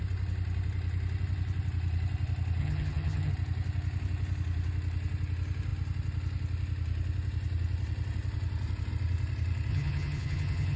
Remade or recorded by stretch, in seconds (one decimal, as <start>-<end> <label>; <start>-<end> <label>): 0.0-2.6 recorded; 2.6-3.3 remade; 3.3-9.7 recorded; 9.7-10.8 remade